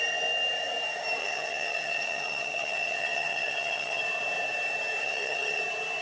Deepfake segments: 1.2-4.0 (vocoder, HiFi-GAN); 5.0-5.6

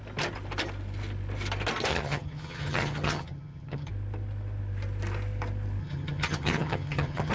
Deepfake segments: 1.9-3.9 (vocoder, HiFi-GAN); 5.8-7.3

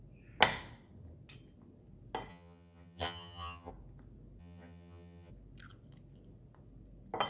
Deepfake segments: 2.3-3.7 (vocoder, HiFi-GAN); 4.4-5.3